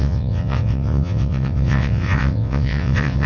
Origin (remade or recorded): remade